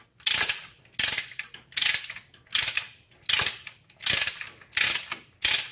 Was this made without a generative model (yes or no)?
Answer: yes